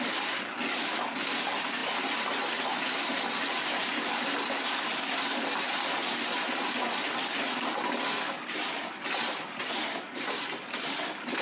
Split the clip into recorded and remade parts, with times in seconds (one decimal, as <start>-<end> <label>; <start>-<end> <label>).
0.0-11.4 recorded

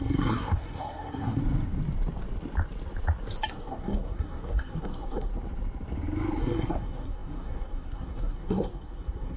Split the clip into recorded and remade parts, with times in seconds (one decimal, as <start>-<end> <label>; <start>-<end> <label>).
0.0-1.4 remade; 1.4-3.5 recorded; 3.5-5.3 remade; 5.3-6.4 recorded; 6.4-9.4 remade

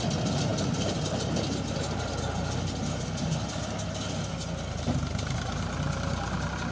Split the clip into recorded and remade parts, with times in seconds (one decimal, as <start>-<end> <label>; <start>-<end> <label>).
0.0-6.7 recorded